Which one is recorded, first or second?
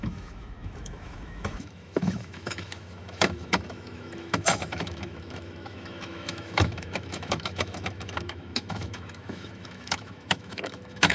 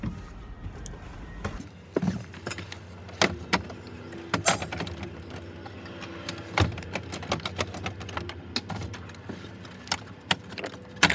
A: second